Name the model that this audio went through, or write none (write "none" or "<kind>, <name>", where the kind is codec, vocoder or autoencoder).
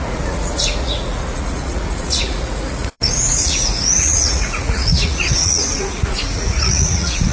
vocoder, Vocos